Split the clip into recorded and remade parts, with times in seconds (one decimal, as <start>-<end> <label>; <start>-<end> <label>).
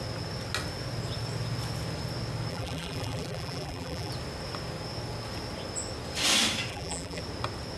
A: 0.0-2.5 recorded; 2.5-4.1 remade; 4.1-6.7 recorded; 6.7-7.2 remade; 7.2-7.8 recorded